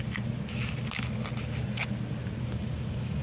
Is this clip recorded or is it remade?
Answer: recorded